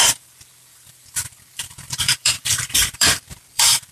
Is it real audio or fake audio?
fake